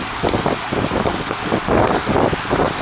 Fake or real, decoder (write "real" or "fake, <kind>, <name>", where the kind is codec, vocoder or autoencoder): real